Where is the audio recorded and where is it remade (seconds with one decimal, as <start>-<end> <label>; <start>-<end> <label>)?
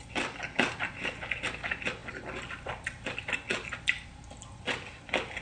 0.0-5.4 recorded